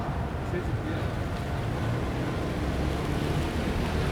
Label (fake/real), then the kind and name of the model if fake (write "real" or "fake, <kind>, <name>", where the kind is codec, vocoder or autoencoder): real